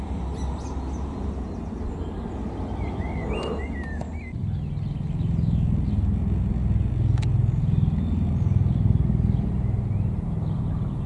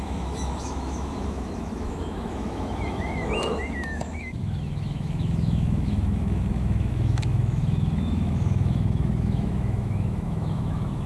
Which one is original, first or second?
first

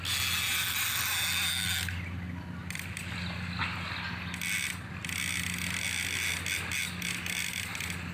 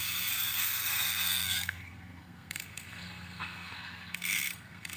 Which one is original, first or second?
first